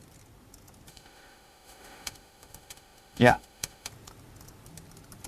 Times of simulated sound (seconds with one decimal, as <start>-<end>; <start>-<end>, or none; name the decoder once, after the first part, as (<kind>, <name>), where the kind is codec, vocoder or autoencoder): 0.9-3.9 (autoencoder, DAC-VAE)